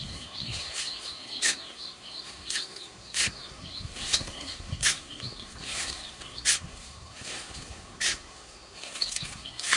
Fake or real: fake